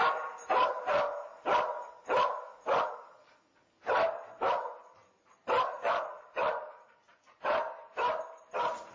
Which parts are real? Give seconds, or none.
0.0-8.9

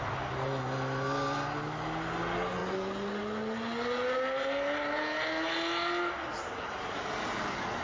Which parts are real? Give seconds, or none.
0.0-7.8